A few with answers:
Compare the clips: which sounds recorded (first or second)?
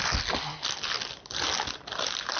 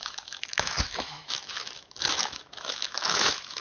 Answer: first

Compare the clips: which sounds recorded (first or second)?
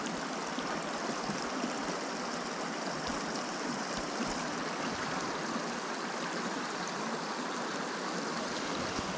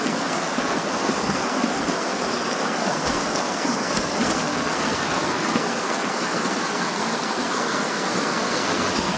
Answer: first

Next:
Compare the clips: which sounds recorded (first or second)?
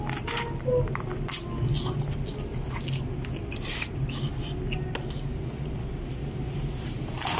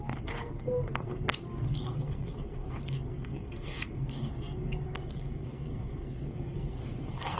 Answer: first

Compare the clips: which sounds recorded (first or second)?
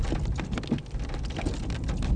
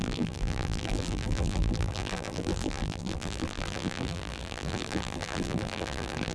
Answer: first